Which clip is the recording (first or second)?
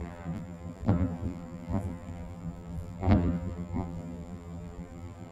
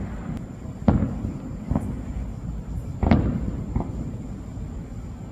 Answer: second